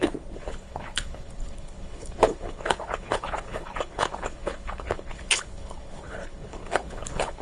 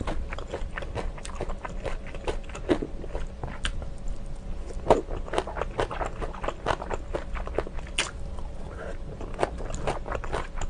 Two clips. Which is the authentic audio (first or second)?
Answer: second